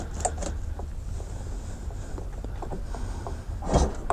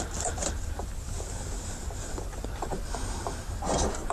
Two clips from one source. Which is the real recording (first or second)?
first